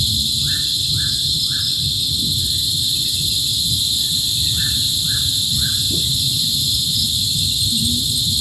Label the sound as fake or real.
real